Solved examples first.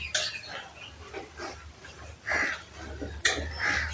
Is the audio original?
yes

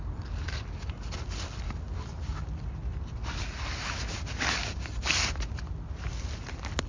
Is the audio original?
yes